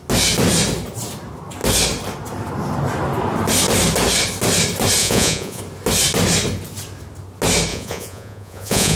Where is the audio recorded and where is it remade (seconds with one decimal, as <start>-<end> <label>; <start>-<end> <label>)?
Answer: 0.0-5.0 recorded; 5.0-5.6 remade; 5.6-7.7 recorded; 7.7-9.0 remade